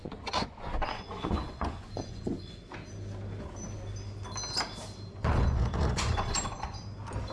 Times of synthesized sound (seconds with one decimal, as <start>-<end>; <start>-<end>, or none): 0.0-2.6; 5.1-6.8